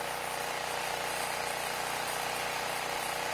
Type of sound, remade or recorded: recorded